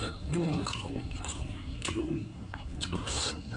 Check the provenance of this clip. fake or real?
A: fake